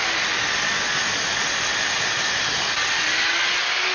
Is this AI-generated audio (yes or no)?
no